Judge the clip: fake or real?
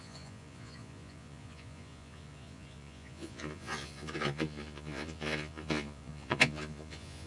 fake